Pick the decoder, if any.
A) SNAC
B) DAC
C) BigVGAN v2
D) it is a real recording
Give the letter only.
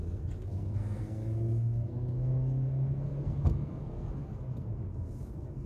A